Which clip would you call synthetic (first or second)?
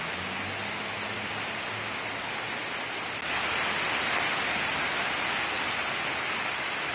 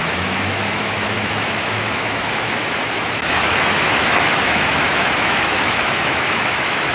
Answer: second